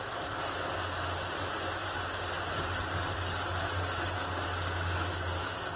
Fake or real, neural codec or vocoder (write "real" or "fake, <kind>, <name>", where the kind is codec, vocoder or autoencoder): real